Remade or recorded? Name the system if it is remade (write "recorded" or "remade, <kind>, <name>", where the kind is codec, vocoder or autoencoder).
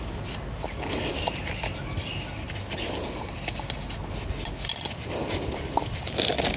recorded